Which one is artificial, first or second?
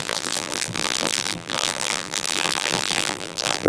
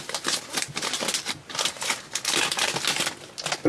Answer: first